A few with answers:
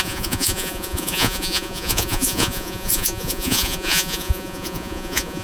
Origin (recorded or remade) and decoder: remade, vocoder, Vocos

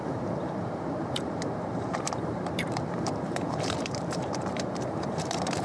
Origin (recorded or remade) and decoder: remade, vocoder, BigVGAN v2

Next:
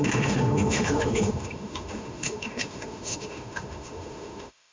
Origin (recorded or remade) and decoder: remade, autoencoder, DAC-VAE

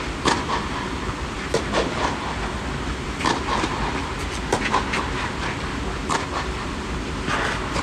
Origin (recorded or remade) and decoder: remade, vocoder, BigVGAN v2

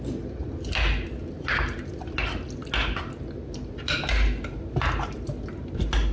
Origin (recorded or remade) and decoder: recorded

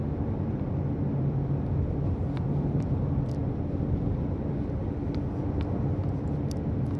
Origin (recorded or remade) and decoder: recorded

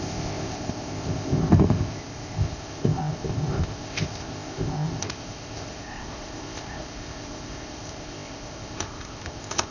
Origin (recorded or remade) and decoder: remade, codec, ZipCodec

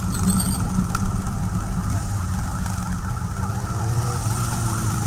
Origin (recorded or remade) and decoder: recorded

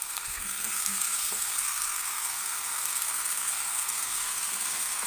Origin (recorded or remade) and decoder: remade, codec, SNAC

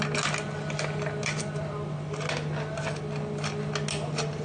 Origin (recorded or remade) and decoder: recorded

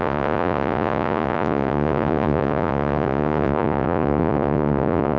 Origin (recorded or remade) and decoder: remade, vocoder, Vocos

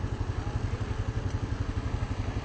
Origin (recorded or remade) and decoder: recorded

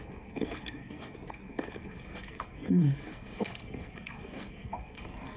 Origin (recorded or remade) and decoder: remade, codec, SNAC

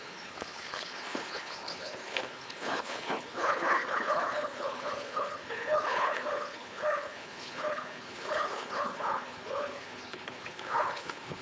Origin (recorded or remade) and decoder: remade, codec, HILCodec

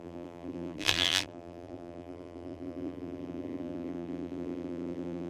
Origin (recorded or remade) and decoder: remade, vocoder, BigVGAN v2